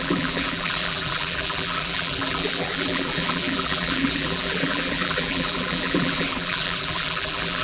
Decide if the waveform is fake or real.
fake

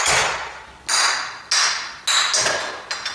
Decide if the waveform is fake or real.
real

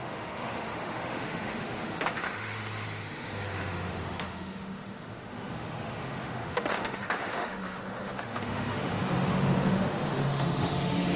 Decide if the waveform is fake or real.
fake